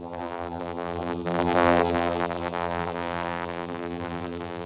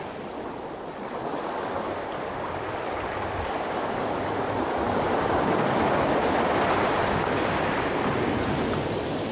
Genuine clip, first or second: second